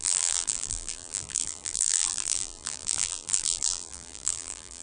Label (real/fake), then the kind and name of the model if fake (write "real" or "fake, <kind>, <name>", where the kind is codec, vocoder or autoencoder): fake, vocoder, BigVGAN v2